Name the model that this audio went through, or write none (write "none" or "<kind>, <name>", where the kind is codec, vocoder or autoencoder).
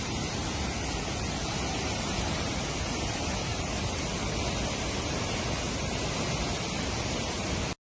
none